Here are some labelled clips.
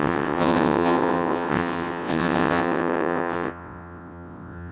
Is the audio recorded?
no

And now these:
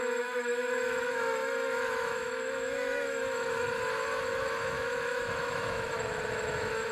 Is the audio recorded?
no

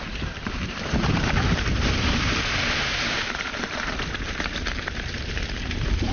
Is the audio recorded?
no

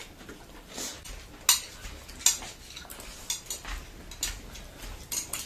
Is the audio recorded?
yes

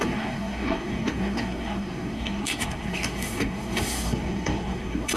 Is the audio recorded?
no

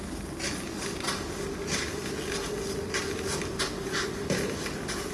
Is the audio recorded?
yes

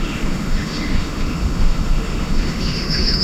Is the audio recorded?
no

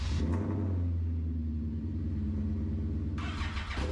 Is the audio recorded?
yes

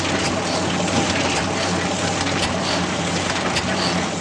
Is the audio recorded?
yes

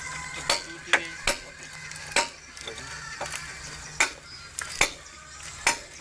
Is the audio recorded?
yes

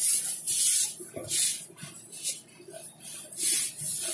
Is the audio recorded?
yes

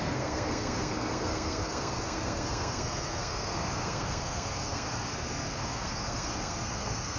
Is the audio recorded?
no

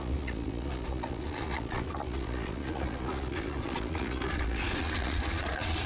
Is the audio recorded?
no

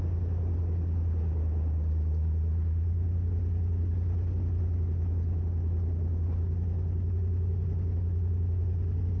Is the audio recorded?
yes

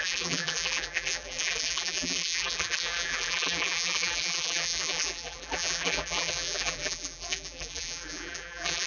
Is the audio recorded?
no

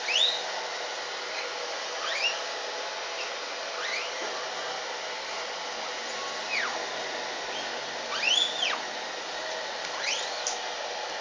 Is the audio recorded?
yes